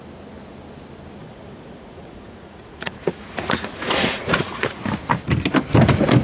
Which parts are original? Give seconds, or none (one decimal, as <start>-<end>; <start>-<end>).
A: 0.0-1.2; 4.8-6.2